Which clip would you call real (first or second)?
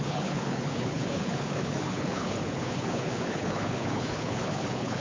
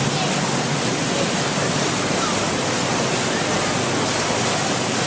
second